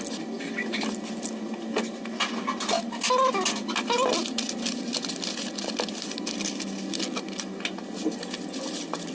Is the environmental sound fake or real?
real